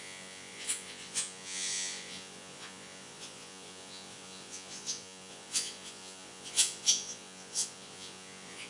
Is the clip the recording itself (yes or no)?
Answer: no